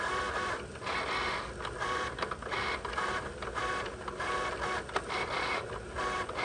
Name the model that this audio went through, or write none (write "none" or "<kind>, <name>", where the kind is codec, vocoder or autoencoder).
none